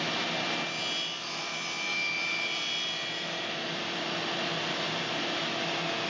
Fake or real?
real